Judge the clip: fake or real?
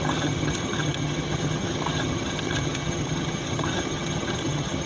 fake